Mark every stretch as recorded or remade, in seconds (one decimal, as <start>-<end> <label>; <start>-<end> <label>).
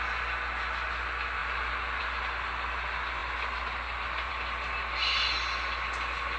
0.0-6.4 recorded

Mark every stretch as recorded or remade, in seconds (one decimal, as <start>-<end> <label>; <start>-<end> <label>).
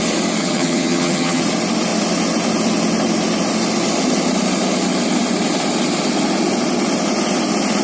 0.0-0.4 recorded; 0.4-1.4 remade; 1.4-7.8 recorded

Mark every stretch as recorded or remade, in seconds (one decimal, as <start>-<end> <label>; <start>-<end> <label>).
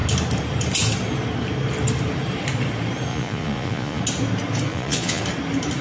0.0-3.1 recorded; 3.1-4.0 remade; 4.0-4.7 recorded; 4.7-5.2 remade; 5.2-5.8 recorded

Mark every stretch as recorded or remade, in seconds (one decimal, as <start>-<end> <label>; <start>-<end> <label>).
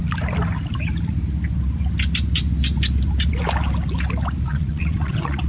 0.0-4.5 recorded; 4.5-5.5 remade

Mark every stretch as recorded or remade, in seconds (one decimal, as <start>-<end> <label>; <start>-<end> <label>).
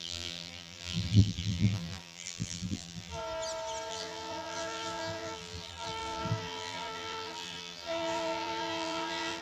0.0-3.2 remade; 3.2-3.9 recorded; 3.9-9.4 remade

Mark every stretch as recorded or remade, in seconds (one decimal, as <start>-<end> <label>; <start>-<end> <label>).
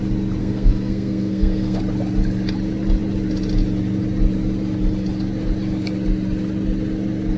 0.0-0.4 recorded; 0.4-1.8 remade; 1.8-7.4 recorded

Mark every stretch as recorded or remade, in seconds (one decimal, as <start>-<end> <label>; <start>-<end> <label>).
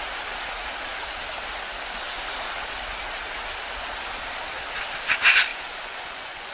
0.0-5.5 recorded; 5.5-6.5 remade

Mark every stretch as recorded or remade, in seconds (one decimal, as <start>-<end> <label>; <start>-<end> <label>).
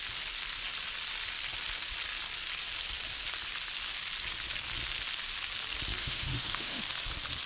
0.0-6.0 recorded; 6.0-6.8 remade; 6.8-7.5 recorded